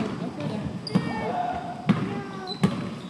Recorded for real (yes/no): yes